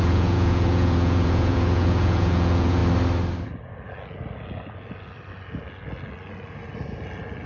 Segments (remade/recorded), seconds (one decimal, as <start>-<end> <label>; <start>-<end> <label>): 0.0-2.8 remade; 2.8-7.5 recorded

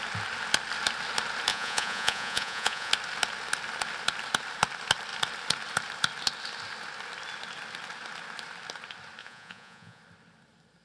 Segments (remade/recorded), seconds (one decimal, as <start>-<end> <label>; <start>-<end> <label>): 0.0-1.5 recorded; 1.5-2.9 remade; 2.9-9.2 recorded; 9.2-10.0 remade; 10.0-10.8 recorded